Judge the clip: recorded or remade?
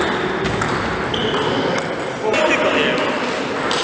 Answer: recorded